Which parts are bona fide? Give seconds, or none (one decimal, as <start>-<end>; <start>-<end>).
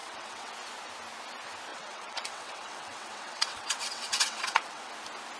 0.5-1.7; 4.9-5.4